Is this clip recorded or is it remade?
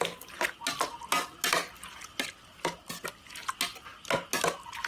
recorded